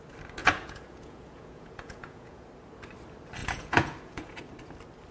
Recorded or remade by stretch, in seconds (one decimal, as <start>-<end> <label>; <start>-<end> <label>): 0.0-0.4 recorded; 0.4-2.5 remade; 2.5-3.4 recorded; 3.4-4.4 remade; 4.4-5.1 recorded